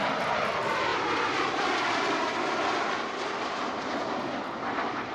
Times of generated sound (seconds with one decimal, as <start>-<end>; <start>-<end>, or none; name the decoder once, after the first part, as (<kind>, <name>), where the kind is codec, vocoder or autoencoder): none